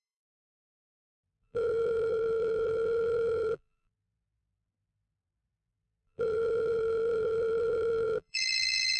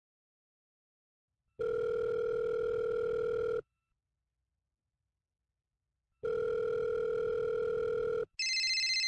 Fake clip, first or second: first